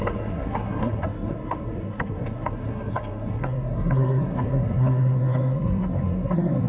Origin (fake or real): fake